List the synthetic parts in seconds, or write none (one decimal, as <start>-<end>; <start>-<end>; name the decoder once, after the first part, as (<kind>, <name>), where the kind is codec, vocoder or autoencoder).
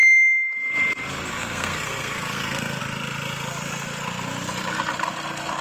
1.3-2.8 (codec, SNAC)